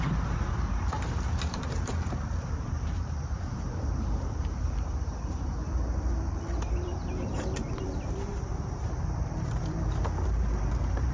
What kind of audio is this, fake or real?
fake